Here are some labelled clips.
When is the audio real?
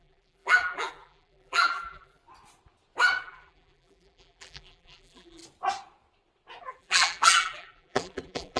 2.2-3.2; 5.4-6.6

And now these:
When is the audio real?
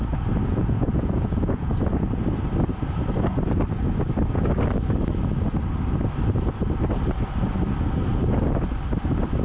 0.0-0.5; 1.7-9.4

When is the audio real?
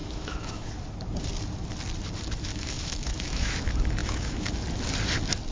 0.7-2.5; 3.6-4.0; 4.5-5.5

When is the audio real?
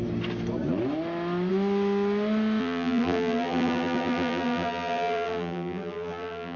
0.0-2.6